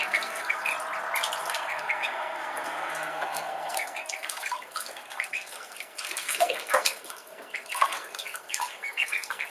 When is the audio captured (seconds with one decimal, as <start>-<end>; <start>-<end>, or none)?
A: 0.7-1.4